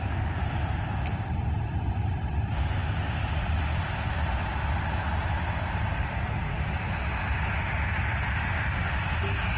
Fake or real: real